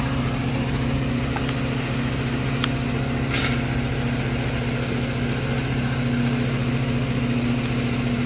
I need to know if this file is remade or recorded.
recorded